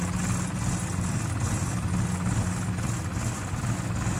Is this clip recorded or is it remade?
recorded